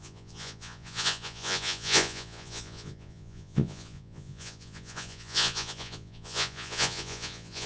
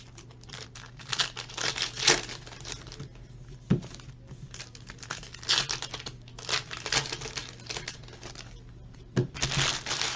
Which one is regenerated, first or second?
first